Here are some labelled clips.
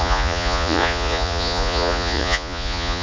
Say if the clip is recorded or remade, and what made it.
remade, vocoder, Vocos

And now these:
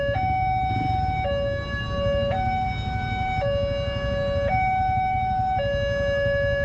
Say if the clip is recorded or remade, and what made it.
recorded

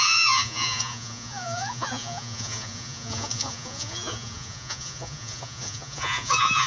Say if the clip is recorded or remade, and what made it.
remade, vocoder, Vocos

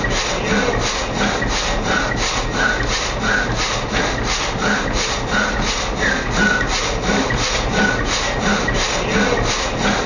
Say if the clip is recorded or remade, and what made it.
recorded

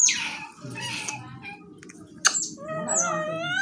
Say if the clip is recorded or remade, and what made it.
recorded